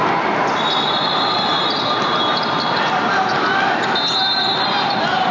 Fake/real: real